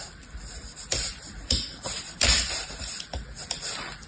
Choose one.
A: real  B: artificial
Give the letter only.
B